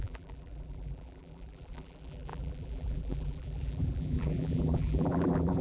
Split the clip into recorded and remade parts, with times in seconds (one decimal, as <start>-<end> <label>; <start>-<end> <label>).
0.0-5.6 remade

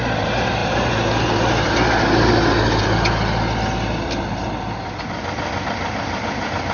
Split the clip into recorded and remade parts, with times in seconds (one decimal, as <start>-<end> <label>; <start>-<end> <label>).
0.0-6.7 recorded

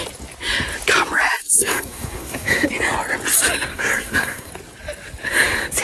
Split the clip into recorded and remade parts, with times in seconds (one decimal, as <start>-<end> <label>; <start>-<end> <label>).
0.0-1.4 recorded; 1.4-2.7 remade; 2.7-3.7 recorded; 3.7-4.5 remade; 4.5-5.8 recorded

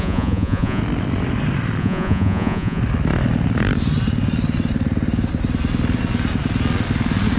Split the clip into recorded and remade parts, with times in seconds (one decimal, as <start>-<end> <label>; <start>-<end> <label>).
0.0-0.8 remade; 0.8-1.8 recorded; 1.8-2.8 remade; 2.8-7.4 recorded

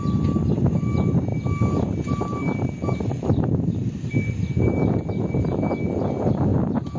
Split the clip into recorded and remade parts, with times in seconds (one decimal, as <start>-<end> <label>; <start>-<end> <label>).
0.0-7.0 recorded

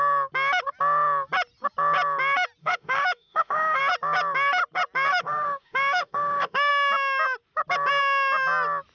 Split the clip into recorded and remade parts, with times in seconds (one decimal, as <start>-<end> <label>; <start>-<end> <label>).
0.0-2.6 recorded; 2.6-3.8 remade; 3.8-5.1 recorded; 5.1-6.7 remade; 6.7-8.9 recorded

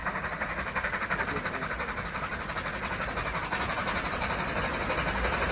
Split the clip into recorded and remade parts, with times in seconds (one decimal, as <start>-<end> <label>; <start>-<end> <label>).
0.0-3.8 recorded; 3.8-4.6 remade; 4.6-5.5 recorded